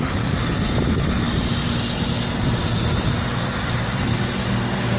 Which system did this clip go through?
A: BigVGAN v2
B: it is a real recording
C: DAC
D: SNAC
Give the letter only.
B